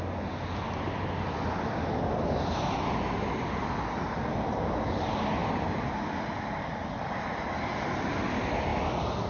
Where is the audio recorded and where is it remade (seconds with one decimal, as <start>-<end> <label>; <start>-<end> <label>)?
0.0-9.3 recorded